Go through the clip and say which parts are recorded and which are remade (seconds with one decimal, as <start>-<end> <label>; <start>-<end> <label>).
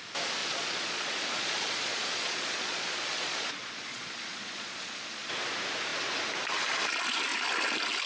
0.0-0.4 recorded; 0.4-5.3 remade; 5.3-8.1 recorded